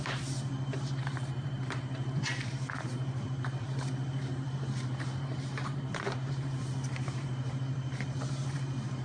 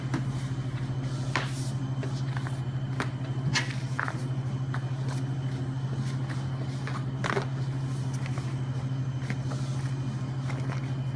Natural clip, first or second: second